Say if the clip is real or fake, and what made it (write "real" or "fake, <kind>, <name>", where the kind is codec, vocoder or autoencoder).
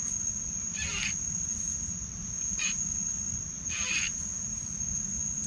real